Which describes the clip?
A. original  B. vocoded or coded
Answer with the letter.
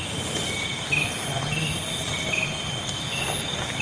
A